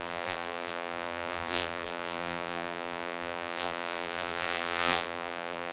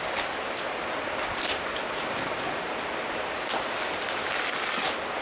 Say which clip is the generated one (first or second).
first